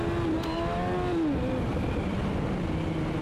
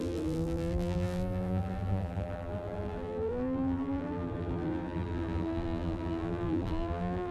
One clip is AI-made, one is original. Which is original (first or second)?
first